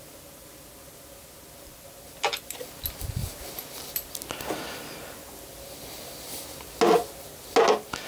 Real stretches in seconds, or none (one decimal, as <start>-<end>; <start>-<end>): 0.0-8.1